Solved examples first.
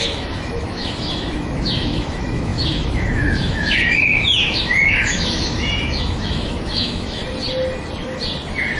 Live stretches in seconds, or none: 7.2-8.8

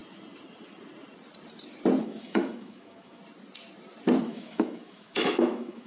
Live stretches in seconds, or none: 0.0-2.0; 3.2-4.2

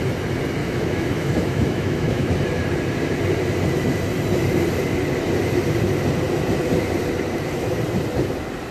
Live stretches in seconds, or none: 0.0-0.6; 2.3-8.7

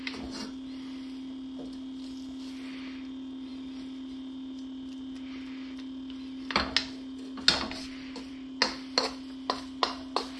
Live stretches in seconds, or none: 0.0-10.4

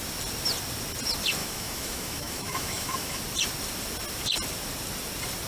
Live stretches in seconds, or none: 0.0-1.4; 3.2-5.5